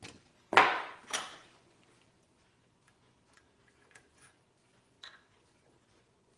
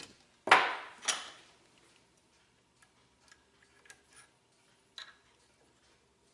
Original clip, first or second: second